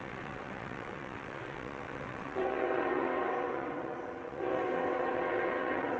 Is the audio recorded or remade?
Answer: remade